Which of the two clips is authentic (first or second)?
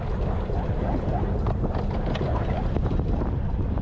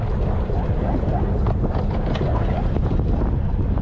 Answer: second